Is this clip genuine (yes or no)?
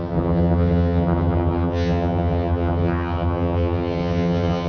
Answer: no